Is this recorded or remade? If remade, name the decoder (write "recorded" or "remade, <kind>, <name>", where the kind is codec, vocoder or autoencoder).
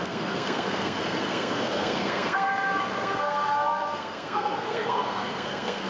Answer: remade, codec, SNAC